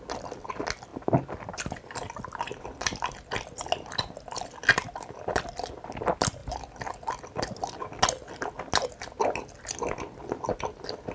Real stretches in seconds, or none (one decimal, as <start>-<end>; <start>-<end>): 0.0-11.1